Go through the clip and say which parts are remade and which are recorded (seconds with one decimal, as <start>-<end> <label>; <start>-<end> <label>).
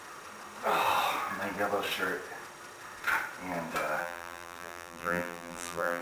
0.0-4.0 recorded; 4.0-6.0 remade